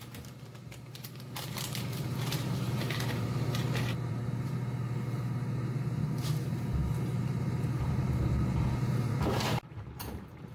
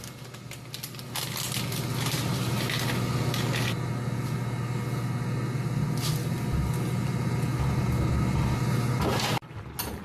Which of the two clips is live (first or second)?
second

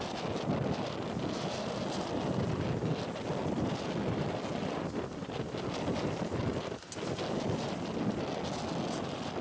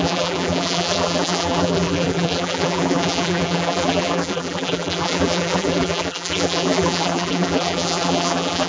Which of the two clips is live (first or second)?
first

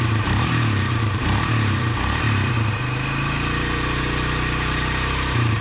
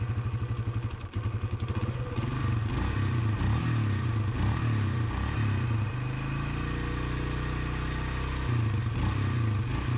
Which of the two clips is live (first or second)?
second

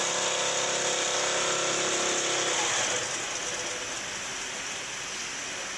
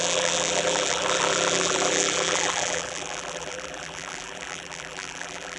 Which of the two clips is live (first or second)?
first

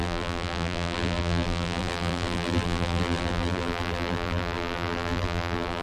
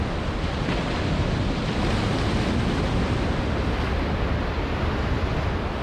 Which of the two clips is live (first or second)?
second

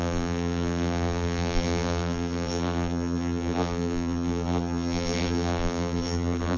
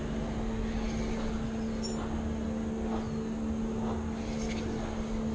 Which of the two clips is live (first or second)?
second